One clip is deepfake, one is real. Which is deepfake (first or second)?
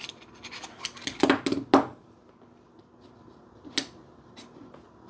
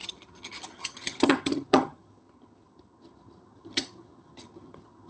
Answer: second